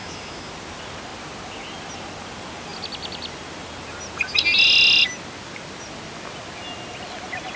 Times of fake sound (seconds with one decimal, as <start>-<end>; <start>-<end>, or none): 0.0-0.5